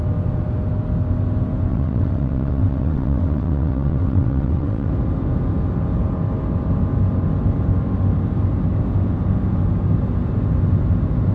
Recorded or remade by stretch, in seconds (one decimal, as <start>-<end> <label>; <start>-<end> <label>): 0.0-1.7 recorded; 1.7-4.9 remade; 4.9-11.3 recorded